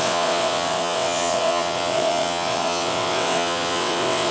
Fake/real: fake